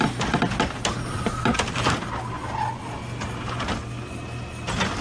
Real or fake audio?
real